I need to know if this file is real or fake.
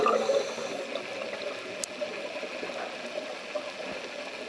real